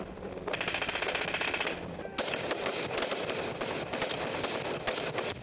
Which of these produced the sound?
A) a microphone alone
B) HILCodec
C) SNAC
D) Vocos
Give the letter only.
A